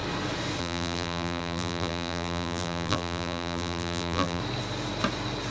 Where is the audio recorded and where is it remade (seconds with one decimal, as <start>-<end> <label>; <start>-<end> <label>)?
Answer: 0.0-0.6 recorded; 0.6-4.4 remade; 4.4-5.5 recorded